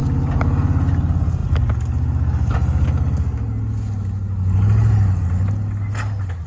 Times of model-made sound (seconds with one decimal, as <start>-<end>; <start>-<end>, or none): none